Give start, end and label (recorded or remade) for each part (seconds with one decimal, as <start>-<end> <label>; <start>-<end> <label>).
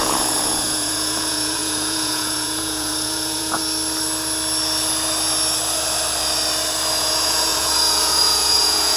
0.0-3.6 remade; 3.6-7.0 recorded; 7.0-9.0 remade